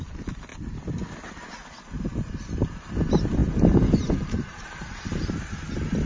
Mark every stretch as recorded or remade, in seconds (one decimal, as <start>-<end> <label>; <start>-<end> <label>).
0.0-3.4 recorded; 3.4-5.3 remade; 5.3-6.1 recorded